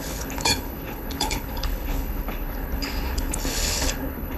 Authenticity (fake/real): fake